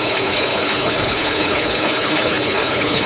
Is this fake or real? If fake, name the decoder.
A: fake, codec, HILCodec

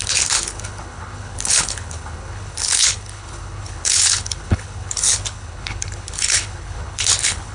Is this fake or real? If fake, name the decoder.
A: fake, codec, HILCodec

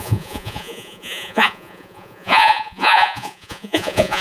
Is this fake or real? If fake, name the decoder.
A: fake, vocoder, Vocos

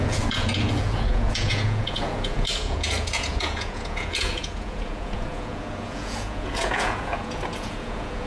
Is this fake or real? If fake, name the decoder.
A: fake, vocoder, Vocos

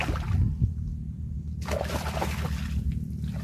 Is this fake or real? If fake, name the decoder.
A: real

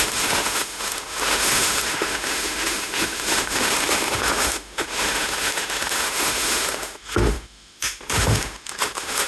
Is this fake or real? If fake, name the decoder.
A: fake, autoencoder, DAC-VAE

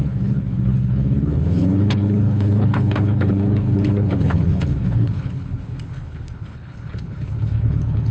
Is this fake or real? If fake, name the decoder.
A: fake, codec, HILCodec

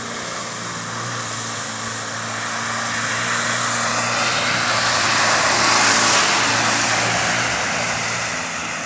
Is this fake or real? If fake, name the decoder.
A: real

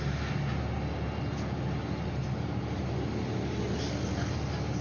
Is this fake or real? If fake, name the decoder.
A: real